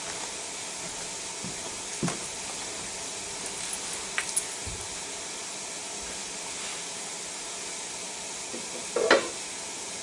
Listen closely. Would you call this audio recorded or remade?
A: recorded